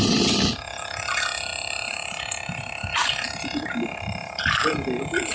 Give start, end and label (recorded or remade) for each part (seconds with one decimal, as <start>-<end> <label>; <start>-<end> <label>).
0.0-1.5 recorded; 1.5-4.4 remade; 4.4-5.3 recorded